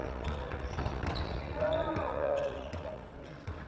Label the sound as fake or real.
fake